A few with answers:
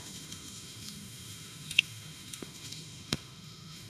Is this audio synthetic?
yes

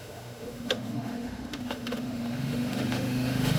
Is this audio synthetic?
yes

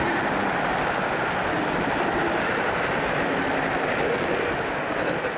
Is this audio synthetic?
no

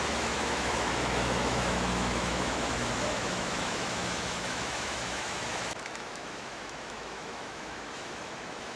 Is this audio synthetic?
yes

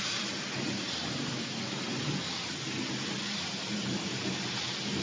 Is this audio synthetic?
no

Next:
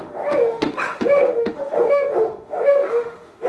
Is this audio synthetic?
yes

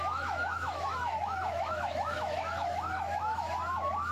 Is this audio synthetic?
yes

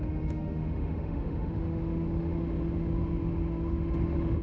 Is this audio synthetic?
yes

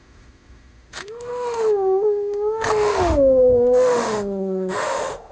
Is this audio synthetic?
yes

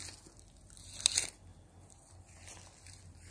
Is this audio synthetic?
no